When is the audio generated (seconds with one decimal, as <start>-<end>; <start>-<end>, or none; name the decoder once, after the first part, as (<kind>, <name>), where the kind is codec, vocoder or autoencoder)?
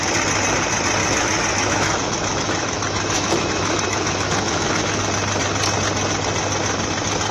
1.0-5.0 (autoencoder, DAC-VAE)